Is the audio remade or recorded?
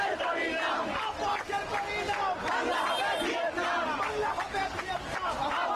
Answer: recorded